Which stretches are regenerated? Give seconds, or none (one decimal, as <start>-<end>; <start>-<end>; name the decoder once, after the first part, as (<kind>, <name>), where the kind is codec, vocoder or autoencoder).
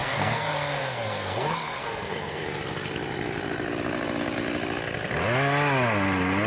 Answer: 0.0-2.4 (codec, SNAC)